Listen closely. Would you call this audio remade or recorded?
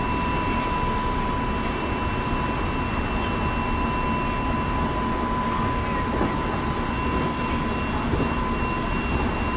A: recorded